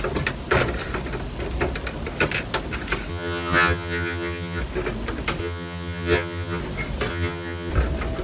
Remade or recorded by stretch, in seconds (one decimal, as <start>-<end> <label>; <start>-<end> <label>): 0.0-3.1 recorded; 3.1-4.6 remade; 4.6-5.4 recorded; 5.4-6.6 remade; 6.6-7.1 recorded; 7.1-7.7 remade; 7.7-8.2 recorded